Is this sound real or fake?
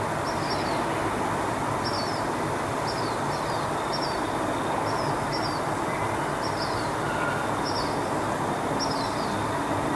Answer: real